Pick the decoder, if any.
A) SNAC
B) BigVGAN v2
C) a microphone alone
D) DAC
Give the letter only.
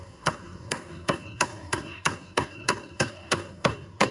A